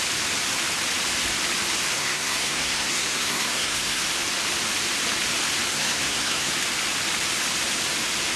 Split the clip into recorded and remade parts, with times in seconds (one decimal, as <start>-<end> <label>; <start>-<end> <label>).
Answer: 0.0-2.0 recorded; 2.0-4.0 remade; 4.0-5.7 recorded; 5.7-6.5 remade; 6.5-8.4 recorded